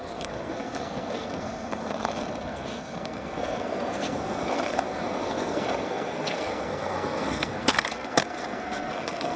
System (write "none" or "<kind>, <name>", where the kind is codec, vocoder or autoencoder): codec, SNAC